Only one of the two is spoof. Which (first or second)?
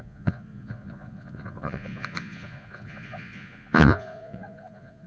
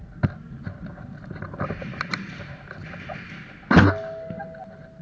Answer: first